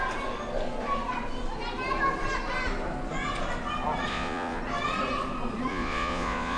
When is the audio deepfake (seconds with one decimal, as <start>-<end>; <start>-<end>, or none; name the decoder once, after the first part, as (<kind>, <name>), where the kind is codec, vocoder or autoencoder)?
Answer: 4.1-4.6 (vocoder, Vocos); 5.7-6.6